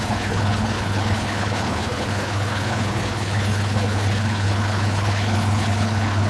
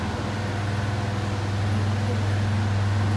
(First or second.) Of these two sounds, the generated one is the first